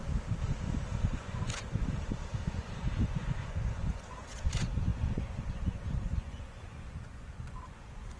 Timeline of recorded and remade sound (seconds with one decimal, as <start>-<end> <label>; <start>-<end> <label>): 0.0-1.1 recorded; 1.1-1.8 remade; 1.8-2.6 recorded; 2.6-8.2 remade